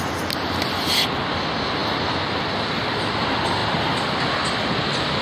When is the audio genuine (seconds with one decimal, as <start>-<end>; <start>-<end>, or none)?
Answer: 0.0-5.2